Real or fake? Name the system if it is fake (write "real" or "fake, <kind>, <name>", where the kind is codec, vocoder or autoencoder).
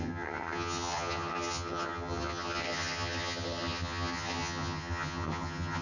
fake, vocoder, HiFi-GAN